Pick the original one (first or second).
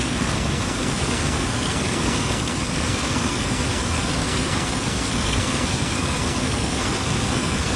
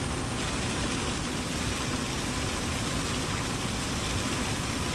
second